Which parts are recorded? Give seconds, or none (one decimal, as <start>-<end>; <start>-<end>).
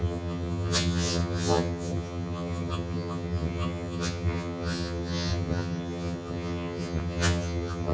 none